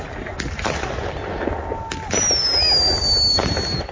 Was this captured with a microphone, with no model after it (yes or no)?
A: yes